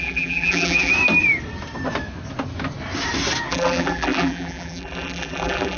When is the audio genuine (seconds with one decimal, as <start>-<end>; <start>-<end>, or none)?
0.9-3.5